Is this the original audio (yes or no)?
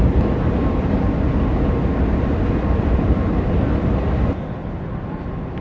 yes